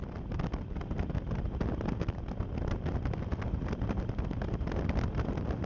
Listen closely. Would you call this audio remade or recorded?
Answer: recorded